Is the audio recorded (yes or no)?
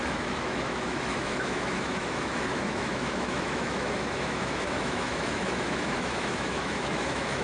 no